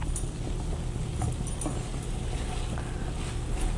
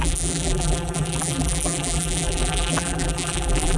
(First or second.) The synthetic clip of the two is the second